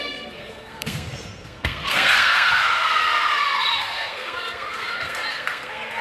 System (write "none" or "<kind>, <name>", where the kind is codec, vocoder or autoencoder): codec, SNAC